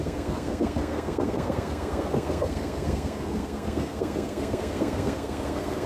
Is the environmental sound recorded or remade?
remade